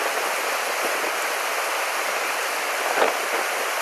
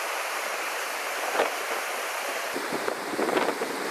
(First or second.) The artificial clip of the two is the second